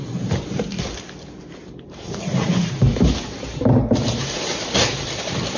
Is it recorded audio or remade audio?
remade